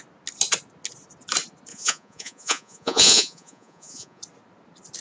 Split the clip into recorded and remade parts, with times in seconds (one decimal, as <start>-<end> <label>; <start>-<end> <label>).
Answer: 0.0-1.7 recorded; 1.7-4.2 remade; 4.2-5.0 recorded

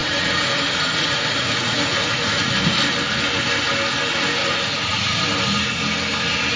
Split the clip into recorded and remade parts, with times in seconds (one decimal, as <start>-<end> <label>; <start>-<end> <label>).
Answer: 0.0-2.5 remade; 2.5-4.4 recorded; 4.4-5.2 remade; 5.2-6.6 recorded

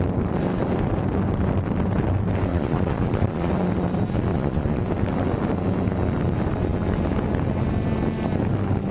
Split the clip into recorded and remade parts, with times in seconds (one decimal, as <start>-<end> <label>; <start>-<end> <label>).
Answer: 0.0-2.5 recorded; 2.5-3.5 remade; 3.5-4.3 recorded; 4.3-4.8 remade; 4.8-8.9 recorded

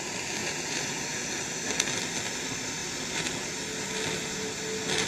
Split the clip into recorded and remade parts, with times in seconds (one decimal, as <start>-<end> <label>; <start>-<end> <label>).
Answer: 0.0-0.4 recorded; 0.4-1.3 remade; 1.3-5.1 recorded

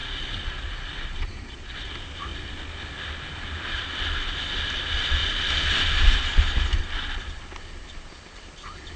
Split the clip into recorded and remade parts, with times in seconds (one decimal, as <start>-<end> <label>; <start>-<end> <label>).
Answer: 0.0-1.9 remade; 1.9-9.0 recorded

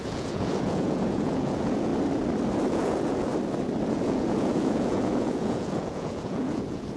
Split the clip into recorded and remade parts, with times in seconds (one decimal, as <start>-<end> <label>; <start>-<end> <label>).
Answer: 0.0-1.9 remade; 1.9-2.7 recorded; 2.7-3.3 remade; 3.3-3.9 recorded; 3.9-7.0 remade

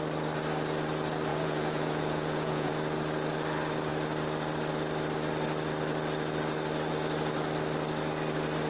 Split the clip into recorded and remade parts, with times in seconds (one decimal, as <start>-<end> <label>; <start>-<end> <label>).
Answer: 0.0-1.3 recorded; 1.3-2.7 remade; 2.7-8.7 recorded